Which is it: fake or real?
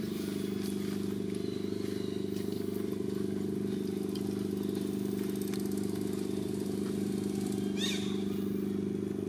real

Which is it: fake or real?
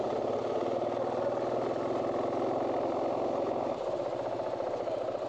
real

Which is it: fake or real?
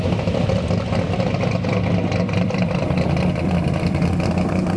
fake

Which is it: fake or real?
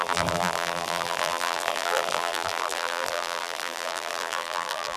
fake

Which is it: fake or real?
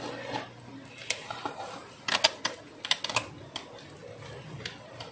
real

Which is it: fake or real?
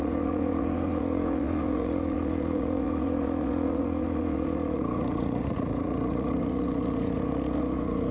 fake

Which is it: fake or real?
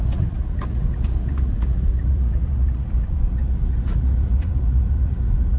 fake